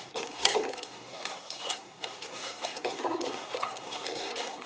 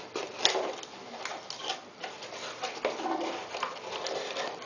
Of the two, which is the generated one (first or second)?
first